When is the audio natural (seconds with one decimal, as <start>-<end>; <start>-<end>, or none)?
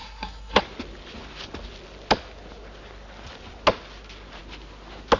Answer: 0.6-5.2